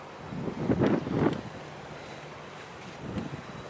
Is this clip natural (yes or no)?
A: yes